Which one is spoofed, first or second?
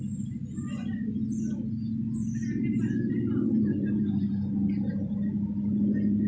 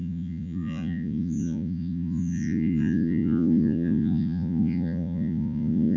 second